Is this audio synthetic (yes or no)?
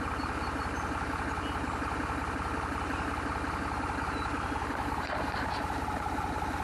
no